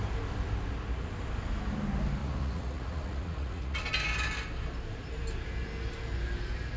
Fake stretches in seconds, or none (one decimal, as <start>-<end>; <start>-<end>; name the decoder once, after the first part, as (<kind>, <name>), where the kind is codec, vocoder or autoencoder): 2.2-3.9 (vocoder, Vocos)